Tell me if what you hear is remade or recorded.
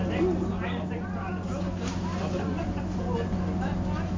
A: recorded